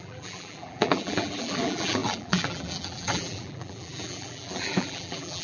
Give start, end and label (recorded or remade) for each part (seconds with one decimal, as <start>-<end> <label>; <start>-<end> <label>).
0.0-5.4 remade